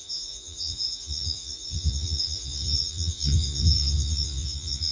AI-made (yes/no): yes